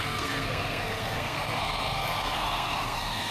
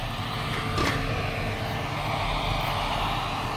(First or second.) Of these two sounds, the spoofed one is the first